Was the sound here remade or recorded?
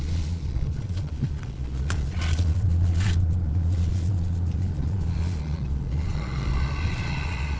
remade